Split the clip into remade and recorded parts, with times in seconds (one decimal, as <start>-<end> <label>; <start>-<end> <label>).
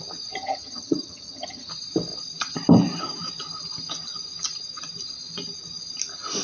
0.0-0.4 recorded; 0.4-1.7 remade; 1.7-6.4 recorded